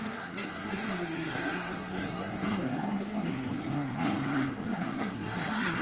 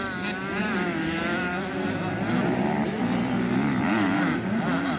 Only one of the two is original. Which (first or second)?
second